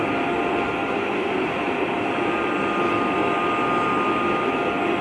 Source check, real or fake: real